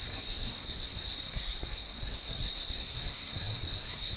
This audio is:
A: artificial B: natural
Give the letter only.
A